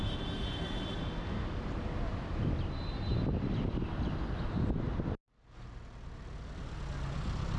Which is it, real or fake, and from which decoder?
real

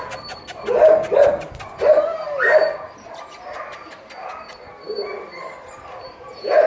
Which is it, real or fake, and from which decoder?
real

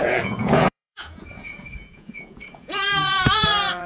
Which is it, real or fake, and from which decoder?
fake, vocoder, Vocos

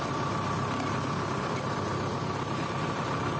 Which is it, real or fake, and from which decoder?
real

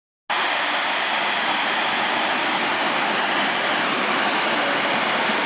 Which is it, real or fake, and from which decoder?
real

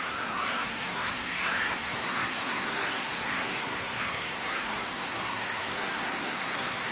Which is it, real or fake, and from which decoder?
fake, codec, SNAC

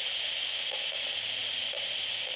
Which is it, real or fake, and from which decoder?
real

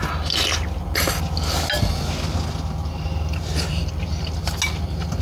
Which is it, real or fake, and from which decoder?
real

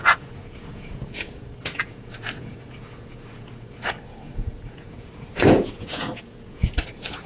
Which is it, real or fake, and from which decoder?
fake, vocoder, Vocos